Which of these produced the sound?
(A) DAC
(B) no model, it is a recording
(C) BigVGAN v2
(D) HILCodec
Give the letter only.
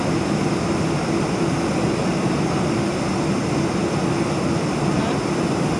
B